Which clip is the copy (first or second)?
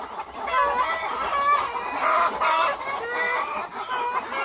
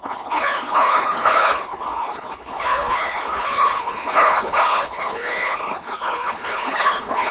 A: second